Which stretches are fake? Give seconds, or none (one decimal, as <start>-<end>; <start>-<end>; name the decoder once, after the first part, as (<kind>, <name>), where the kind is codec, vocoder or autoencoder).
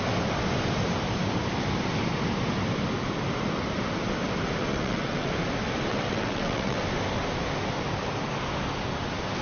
4.7-5.3 (vocoder, WaveNeXt); 5.9-6.8